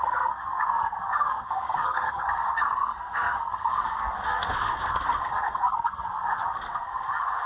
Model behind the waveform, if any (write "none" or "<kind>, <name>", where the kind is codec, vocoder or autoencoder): codec, SNAC